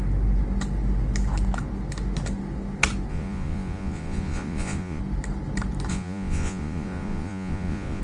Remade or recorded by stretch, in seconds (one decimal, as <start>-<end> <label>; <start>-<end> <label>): 0.0-3.1 recorded; 3.1-5.0 remade; 5.0-5.9 recorded; 5.9-8.0 remade